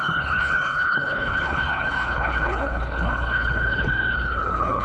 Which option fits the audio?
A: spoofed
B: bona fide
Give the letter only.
A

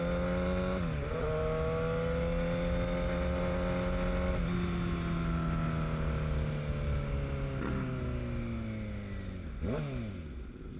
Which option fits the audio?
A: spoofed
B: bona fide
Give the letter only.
B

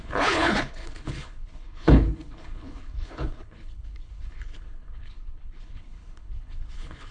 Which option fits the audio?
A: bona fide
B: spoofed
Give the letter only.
B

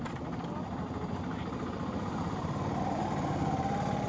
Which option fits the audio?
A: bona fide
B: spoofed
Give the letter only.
A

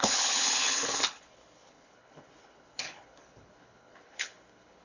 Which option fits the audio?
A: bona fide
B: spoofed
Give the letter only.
B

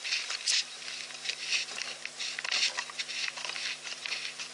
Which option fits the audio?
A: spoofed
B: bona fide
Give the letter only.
B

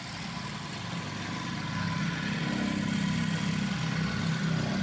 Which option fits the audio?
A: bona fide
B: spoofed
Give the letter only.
A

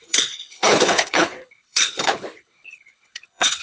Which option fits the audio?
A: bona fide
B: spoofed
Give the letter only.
B